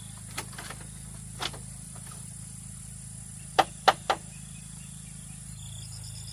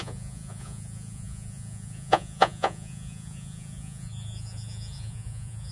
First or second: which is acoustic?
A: first